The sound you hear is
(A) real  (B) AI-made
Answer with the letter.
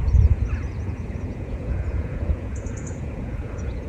B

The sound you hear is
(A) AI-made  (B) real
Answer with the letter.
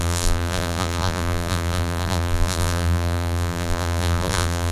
A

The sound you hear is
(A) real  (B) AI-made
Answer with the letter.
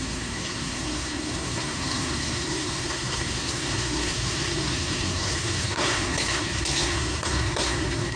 B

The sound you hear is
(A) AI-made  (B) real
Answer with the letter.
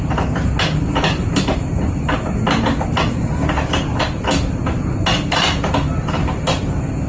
B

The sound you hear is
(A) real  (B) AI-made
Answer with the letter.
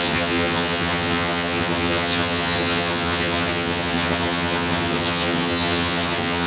B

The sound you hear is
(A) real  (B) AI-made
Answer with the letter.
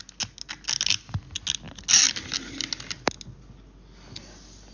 A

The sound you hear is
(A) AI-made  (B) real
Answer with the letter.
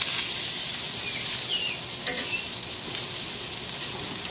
B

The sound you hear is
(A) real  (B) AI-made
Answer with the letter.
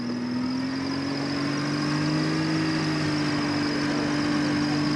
A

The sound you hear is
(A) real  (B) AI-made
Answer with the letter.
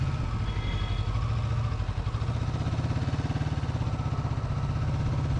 A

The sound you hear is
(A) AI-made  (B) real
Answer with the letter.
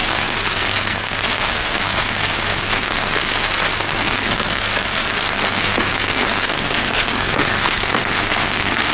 A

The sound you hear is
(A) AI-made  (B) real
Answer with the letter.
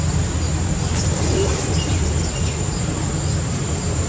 B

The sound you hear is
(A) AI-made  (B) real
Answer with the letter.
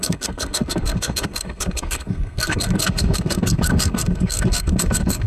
A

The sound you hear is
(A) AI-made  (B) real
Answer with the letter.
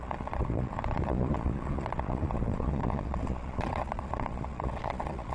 A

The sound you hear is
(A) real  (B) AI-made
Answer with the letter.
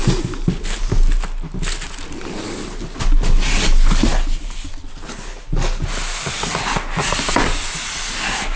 A